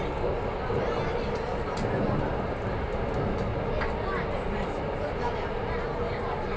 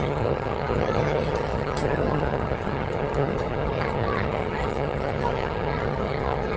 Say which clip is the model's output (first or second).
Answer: second